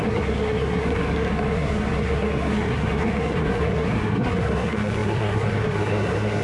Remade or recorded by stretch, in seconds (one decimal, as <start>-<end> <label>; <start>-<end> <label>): 0.0-6.4 remade